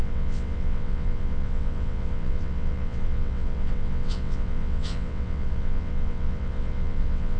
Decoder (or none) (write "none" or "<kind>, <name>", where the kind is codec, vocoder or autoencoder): vocoder, WaveNeXt